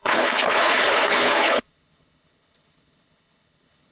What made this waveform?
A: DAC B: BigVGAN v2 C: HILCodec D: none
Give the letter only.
C